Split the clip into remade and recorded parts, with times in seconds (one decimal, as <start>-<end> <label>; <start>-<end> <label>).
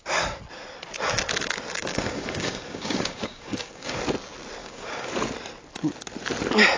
0.0-1.9 recorded; 1.9-4.0 remade; 4.0-4.6 recorded; 4.6-5.1 remade; 5.1-6.8 recorded